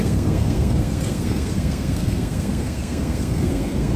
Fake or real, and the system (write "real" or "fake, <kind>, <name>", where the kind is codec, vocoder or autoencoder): fake, codec, SNAC